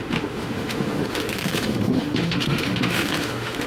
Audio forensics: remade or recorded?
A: remade